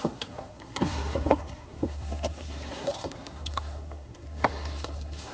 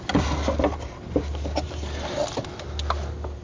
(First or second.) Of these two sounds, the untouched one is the second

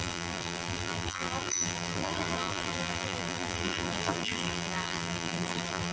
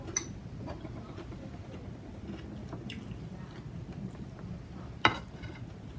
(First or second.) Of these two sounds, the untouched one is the second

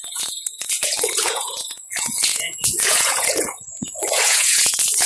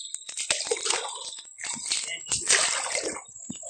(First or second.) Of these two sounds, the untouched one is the second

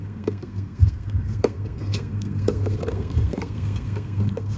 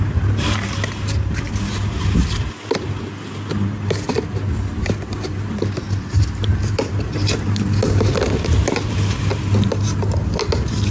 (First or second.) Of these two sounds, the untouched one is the second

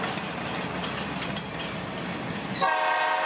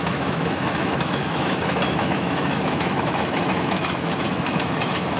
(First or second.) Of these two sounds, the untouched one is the first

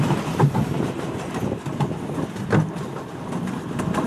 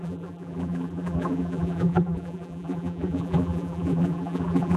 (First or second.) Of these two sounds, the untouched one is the first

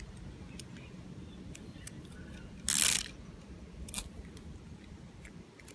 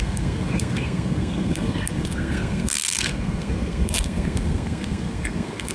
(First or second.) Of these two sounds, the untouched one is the first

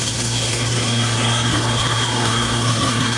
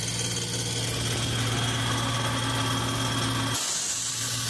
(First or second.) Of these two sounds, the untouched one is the second